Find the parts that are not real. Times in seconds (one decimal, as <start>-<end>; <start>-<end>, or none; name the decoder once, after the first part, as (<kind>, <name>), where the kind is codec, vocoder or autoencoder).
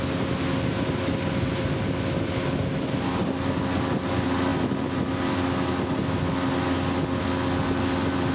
none